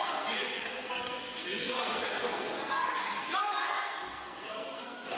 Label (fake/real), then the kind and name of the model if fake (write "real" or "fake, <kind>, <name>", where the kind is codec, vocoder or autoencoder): fake, codec, SNAC